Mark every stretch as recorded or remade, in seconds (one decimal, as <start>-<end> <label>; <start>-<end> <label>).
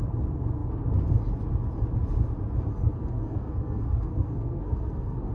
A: 0.0-2.7 recorded; 2.7-5.3 remade